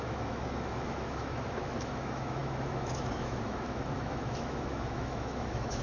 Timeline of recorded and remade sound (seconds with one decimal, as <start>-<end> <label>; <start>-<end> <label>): 0.0-5.8 remade